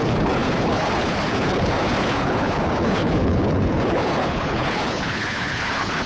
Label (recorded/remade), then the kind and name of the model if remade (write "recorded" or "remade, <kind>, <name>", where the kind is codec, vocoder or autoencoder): remade, codec, HILCodec